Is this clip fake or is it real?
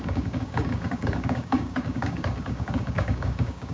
fake